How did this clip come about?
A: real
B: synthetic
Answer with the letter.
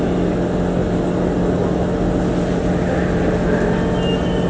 A